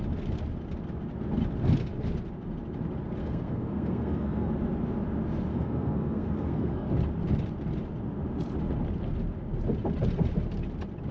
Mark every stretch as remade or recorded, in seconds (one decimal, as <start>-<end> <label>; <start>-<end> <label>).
0.0-3.2 recorded; 3.2-4.5 remade; 4.5-5.5 recorded; 5.5-6.9 remade; 6.9-11.1 recorded